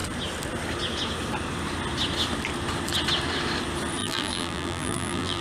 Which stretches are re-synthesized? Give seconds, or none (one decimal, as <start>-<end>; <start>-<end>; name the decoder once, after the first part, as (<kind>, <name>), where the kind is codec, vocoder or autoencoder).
4.0-5.4 (vocoder, BigVGAN v2)